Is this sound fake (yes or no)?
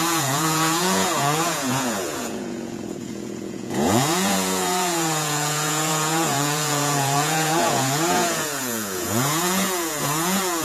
yes